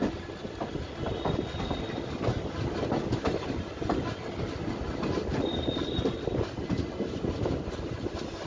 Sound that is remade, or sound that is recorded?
recorded